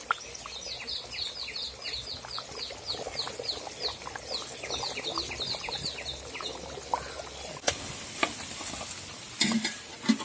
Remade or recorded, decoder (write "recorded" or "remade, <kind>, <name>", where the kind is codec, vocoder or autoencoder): recorded